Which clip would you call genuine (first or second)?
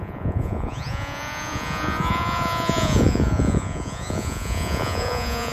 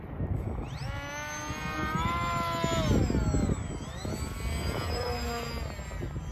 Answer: second